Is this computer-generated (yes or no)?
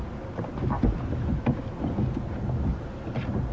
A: no